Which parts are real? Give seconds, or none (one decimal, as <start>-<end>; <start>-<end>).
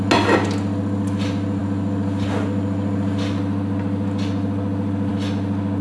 0.0-5.8